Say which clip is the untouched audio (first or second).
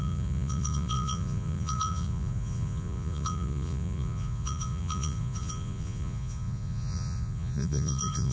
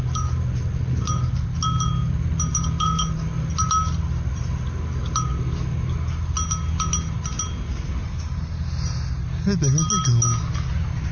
second